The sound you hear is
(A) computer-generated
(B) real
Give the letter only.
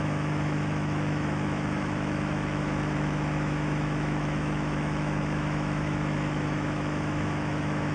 A